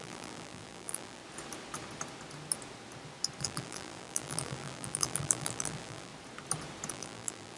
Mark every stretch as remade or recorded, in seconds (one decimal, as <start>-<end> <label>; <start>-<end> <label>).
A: 0.0-1.2 remade; 1.2-3.4 recorded; 3.4-6.1 remade; 6.1-6.9 recorded; 6.9-7.6 remade